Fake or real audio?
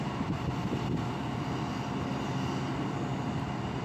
real